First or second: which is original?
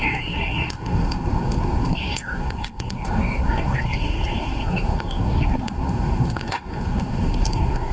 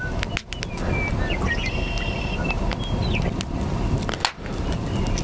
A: second